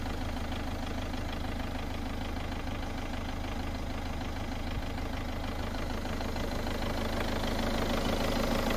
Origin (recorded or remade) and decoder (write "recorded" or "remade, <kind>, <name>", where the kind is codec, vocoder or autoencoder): recorded